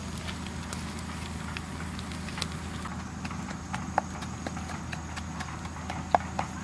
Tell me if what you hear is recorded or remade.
recorded